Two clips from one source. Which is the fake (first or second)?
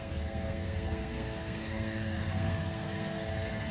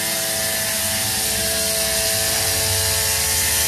first